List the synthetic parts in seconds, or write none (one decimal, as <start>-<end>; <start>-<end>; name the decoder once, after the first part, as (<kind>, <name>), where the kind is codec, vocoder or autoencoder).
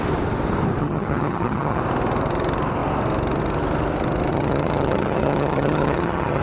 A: 0.8-1.8 (vocoder, HiFi-GAN); 4.3-6.4